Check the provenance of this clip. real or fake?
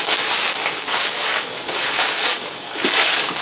fake